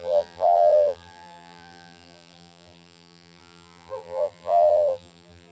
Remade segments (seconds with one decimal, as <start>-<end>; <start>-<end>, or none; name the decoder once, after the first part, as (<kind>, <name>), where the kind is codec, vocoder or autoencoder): 0.0-5.5 (vocoder, BigVGAN v2)